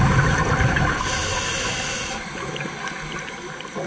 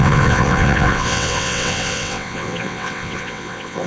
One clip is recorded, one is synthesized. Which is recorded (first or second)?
first